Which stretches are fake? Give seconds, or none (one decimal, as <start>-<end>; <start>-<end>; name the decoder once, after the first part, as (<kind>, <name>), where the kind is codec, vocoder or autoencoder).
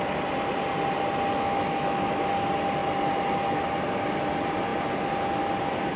1.3-2.3 (autoencoder, DAC-VAE)